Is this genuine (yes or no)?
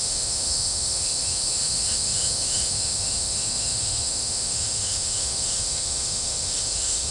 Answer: no